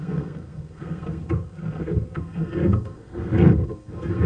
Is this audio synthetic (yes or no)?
yes